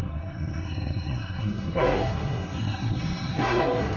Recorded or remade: remade